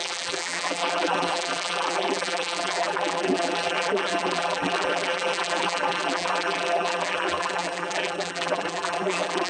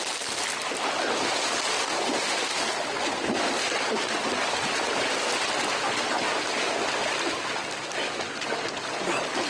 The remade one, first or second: first